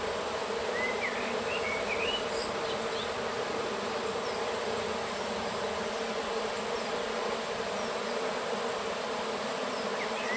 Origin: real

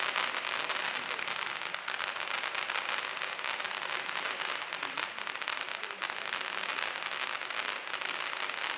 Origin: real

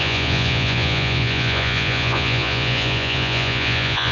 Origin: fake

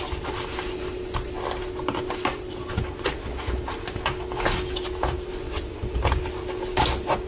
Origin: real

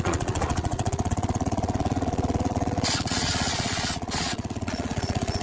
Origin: fake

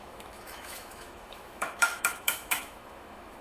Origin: fake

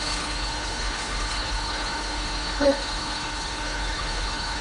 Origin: fake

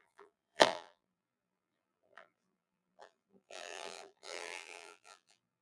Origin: fake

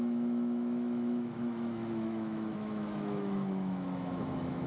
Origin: fake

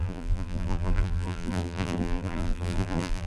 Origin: fake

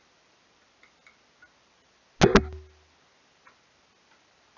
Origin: real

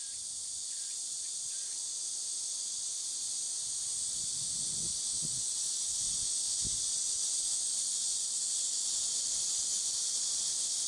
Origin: real